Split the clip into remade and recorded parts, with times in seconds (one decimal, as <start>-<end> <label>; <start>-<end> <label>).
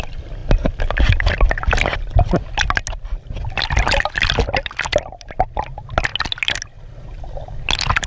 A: 0.0-8.1 recorded